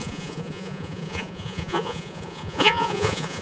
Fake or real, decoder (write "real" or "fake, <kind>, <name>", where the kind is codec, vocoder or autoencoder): fake, vocoder, Vocos